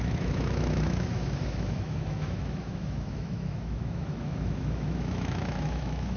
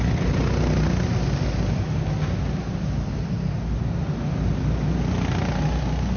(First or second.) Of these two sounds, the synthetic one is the first